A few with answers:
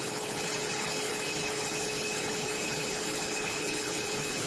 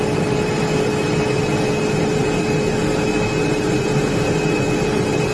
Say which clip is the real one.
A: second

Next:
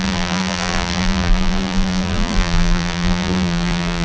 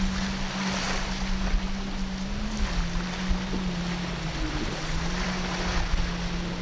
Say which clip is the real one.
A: second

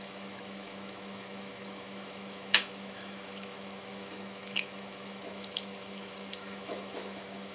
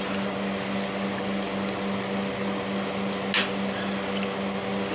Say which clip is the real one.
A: second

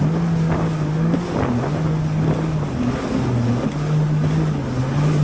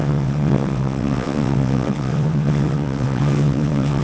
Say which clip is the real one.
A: first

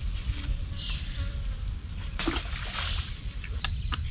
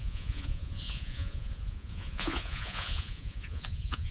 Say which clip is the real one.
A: first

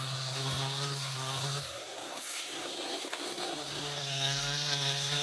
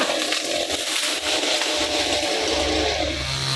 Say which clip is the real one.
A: second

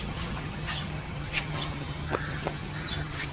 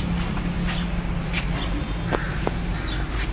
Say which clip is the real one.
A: second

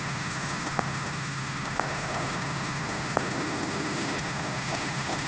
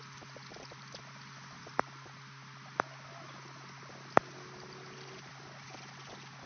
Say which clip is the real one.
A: second